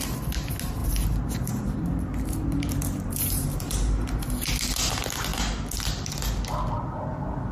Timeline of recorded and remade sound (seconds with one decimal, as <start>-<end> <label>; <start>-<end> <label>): 0.0-0.8 recorded; 0.8-4.2 remade; 4.2-7.5 recorded